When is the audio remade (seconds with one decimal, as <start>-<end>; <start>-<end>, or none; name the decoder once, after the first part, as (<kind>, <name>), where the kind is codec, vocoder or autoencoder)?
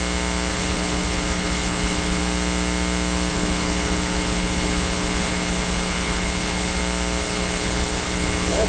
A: 0.5-2.2 (codec, HILCodec); 3.3-6.8; 7.2-8.7